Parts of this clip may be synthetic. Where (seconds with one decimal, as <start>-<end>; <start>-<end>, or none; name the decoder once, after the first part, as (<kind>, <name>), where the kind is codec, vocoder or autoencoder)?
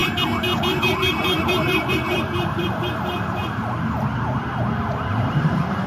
0.0-3.4 (vocoder, BigVGAN v2); 5.1-5.9